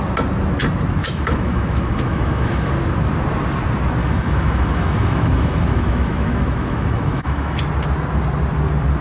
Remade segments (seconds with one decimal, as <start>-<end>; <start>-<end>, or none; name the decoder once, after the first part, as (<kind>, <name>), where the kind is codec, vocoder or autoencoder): 1.0-2.7 (autoencoder, DAC-VAE); 4.0-7.6